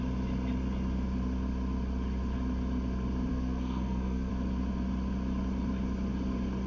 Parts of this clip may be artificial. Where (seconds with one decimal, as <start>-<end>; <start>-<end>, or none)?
3.3-4.3